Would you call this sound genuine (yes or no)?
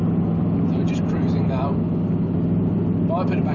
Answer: yes